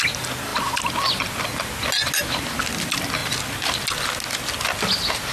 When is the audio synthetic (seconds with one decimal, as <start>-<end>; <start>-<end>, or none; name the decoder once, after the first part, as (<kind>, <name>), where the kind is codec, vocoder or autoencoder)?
none